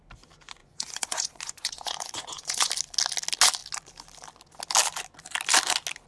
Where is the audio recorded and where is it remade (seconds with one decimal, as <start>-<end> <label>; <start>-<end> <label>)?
0.0-0.6 recorded; 0.6-2.7 remade; 2.7-6.1 recorded